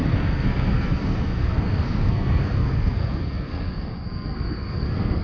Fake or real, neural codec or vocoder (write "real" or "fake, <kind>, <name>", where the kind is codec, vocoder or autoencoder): fake, codec, SNAC